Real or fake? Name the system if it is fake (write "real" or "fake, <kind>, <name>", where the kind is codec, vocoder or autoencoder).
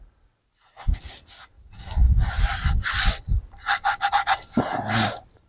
real